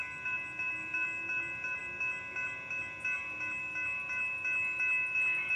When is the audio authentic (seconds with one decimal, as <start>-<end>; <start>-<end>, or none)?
0.0-5.6